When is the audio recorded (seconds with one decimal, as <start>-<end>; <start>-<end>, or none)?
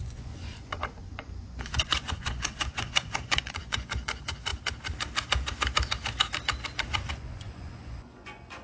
4.5-7.1